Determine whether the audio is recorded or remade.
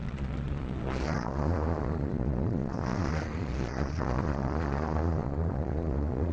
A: remade